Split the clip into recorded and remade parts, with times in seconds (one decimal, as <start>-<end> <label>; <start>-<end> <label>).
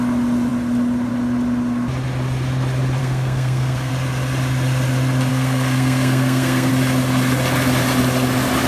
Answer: 0.0-3.0 recorded; 3.0-3.9 remade; 3.9-5.3 recorded; 5.3-6.7 remade; 6.7-8.7 recorded